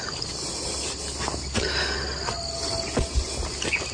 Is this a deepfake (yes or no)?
no